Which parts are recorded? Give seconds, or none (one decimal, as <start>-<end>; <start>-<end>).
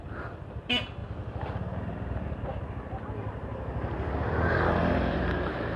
1.0-4.5